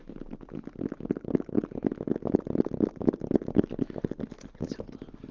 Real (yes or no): yes